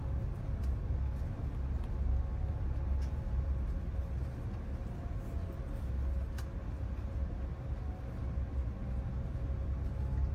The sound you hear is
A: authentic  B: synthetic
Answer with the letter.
A